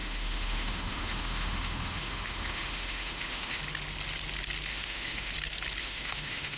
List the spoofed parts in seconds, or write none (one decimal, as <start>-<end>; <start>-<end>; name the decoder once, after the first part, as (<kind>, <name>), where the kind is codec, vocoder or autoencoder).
0.0-3.6 (autoencoder, DAC-VAE); 4.7-5.3; 5.8-6.6